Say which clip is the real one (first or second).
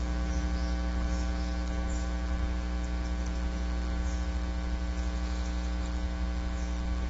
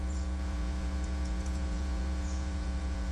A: first